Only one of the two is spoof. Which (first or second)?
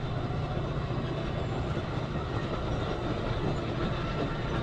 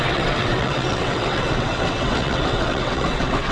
second